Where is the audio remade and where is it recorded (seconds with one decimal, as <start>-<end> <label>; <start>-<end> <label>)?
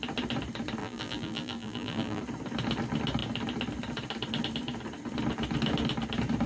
0.0-0.8 recorded; 0.8-2.2 remade; 2.2-6.5 recorded